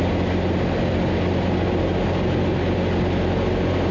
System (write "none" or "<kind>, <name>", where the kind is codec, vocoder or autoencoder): none